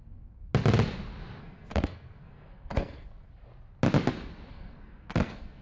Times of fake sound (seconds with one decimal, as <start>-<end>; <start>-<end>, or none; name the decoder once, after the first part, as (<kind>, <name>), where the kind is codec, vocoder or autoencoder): 0.0-0.5 (codec, SNAC); 1.4-3.5; 4.5-5.6